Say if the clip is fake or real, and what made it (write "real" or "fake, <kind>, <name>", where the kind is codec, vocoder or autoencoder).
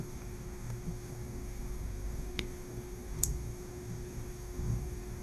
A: fake, codec, DAC